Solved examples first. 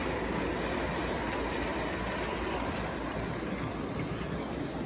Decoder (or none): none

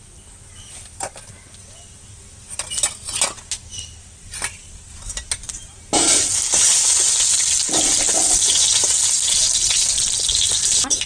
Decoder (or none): none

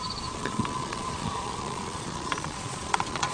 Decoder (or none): vocoder, Vocos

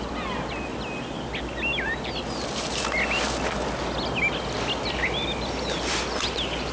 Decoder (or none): none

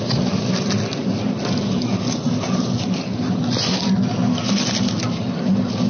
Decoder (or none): none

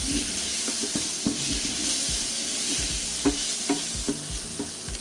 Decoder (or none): none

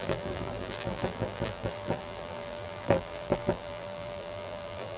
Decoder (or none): vocoder, BigVGAN v2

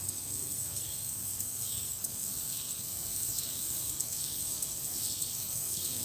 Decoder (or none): codec, SNAC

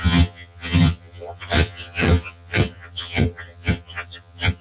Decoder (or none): vocoder, HiFi-GAN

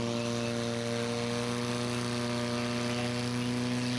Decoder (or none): none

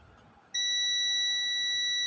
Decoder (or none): none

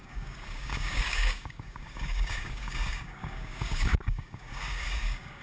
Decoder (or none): codec, DAC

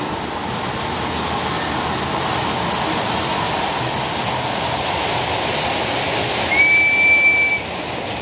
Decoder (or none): none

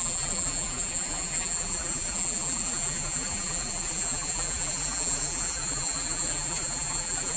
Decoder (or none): vocoder, BigVGAN v2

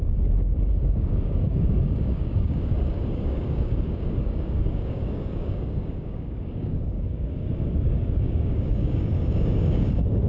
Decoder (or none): codec, DAC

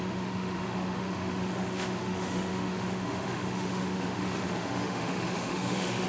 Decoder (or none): autoencoder, DAC-VAE